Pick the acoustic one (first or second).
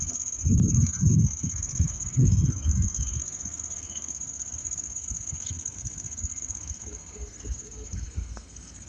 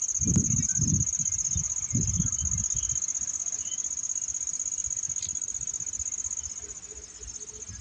second